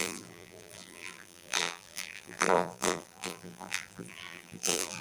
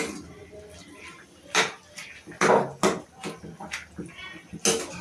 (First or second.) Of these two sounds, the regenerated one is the first